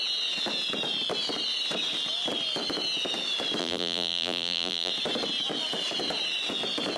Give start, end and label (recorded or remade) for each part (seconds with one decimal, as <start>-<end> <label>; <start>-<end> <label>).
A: 0.0-3.6 recorded; 3.6-4.9 remade; 4.9-7.0 recorded